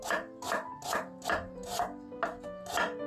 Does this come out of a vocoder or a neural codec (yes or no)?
no